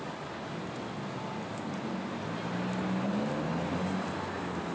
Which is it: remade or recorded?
recorded